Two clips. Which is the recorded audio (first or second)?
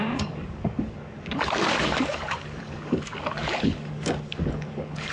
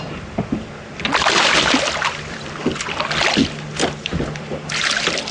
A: second